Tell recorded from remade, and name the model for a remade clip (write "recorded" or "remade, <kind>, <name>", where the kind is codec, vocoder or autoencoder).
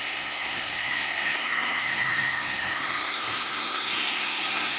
remade, codec, SNAC